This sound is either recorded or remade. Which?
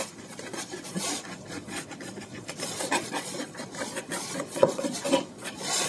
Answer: remade